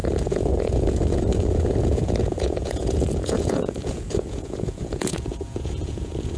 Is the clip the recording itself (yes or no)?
no